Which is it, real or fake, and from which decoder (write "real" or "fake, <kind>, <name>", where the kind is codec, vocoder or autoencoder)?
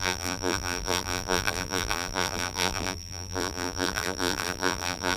fake, vocoder, BigVGAN v2